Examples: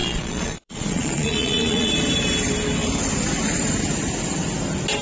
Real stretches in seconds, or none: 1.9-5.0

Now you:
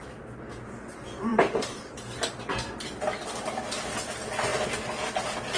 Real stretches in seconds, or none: 0.0-5.6

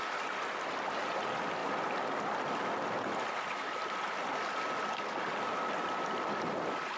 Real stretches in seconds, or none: 0.0-7.0

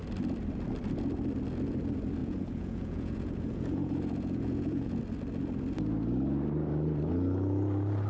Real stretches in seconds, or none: 0.0-2.2; 5.0-8.1

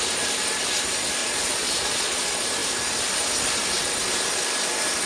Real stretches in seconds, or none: 0.0-1.2; 2.2-5.1

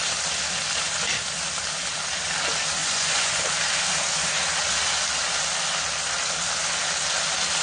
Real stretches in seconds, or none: 0.0-2.8; 3.4-7.6

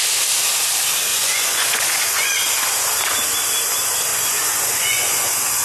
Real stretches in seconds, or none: 0.0-1.1; 2.3-4.1